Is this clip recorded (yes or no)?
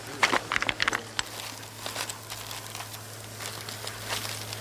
yes